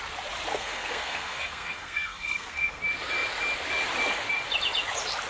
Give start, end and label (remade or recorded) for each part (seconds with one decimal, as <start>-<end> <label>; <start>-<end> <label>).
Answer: 0.0-0.5 recorded; 0.5-2.8 remade; 2.8-5.3 recorded

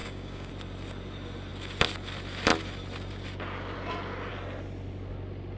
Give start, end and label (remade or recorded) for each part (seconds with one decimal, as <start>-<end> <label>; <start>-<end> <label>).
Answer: 0.0-0.5 remade; 0.5-5.6 recorded

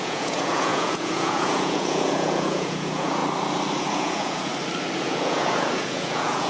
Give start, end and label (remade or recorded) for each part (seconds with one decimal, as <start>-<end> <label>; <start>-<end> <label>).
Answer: 0.0-3.2 remade; 3.2-3.8 recorded; 3.8-4.5 remade; 4.5-5.0 recorded; 5.0-6.5 remade

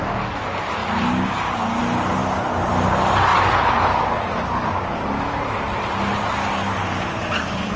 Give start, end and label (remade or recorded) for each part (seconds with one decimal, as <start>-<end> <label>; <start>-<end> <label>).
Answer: 0.0-7.8 recorded

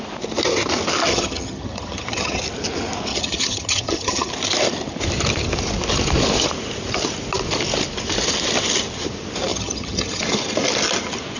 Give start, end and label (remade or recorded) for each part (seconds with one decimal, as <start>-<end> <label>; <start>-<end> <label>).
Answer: 0.0-1.1 recorded; 1.1-2.4 remade; 2.4-3.1 recorded; 3.1-4.3 remade; 4.3-9.5 recorded; 9.5-10.2 remade; 10.2-11.4 recorded